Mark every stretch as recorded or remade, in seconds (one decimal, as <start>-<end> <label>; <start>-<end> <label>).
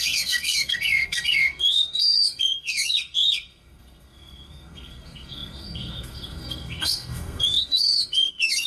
0.0-8.7 remade